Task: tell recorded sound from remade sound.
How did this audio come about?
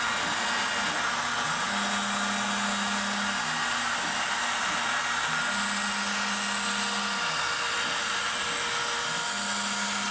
recorded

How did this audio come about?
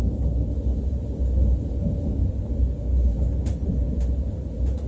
recorded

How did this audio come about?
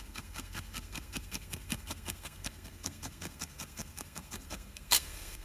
remade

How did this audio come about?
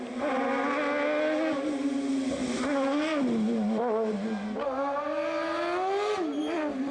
recorded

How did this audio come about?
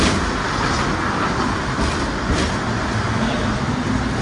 recorded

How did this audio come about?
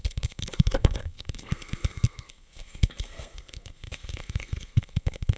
remade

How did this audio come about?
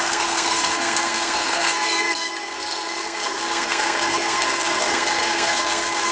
remade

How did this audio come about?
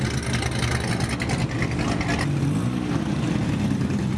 recorded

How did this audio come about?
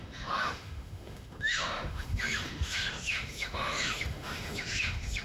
remade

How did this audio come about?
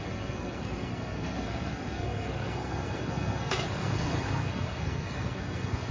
remade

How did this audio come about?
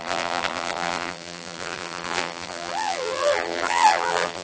remade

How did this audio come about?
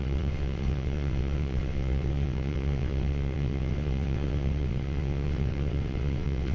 remade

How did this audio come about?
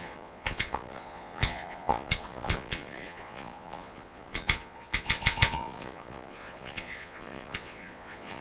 remade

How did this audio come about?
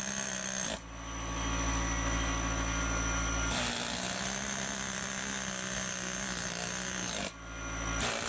recorded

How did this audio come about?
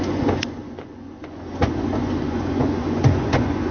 remade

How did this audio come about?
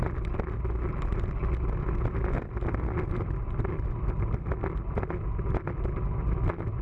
recorded